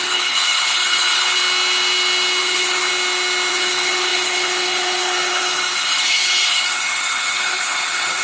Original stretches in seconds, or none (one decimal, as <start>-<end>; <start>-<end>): 1.4-2.4; 2.9-3.5